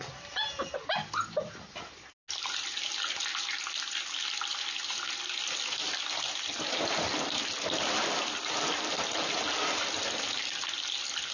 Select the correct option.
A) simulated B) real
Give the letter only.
B